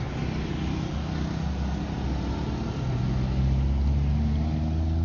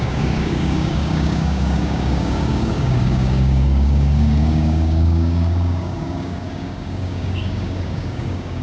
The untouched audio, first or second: first